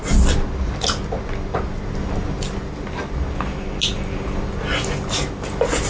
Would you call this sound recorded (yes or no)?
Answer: yes